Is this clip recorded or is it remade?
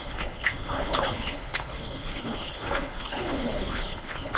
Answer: remade